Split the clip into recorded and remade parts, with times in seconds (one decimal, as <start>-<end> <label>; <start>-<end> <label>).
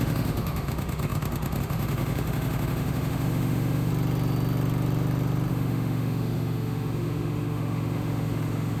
0.0-3.9 remade; 3.9-5.5 recorded; 5.5-8.8 remade